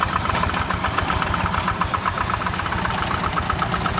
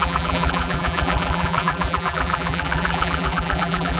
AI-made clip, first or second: second